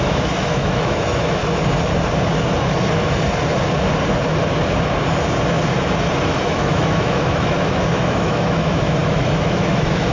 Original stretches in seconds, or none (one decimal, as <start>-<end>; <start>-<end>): 1.4-6.4